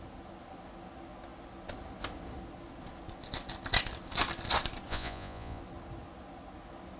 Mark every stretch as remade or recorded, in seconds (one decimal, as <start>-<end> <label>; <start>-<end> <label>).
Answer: 0.0-4.9 recorded; 4.9-5.6 remade; 5.6-7.0 recorded